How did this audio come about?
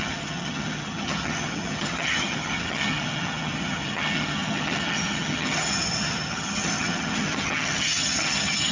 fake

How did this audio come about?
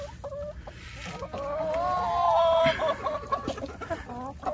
real